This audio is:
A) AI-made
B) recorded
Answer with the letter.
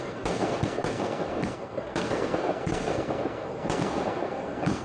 A